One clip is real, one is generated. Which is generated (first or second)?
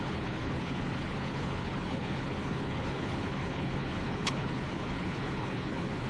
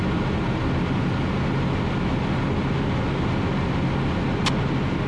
first